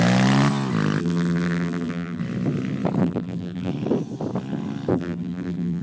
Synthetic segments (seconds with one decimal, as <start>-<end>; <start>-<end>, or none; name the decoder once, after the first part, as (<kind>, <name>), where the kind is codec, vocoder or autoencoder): 1.0-2.2 (vocoder, BigVGAN v2); 3.0-3.7; 4.9-5.8